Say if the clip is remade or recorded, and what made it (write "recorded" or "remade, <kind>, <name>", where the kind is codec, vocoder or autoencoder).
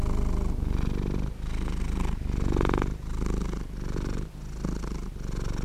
recorded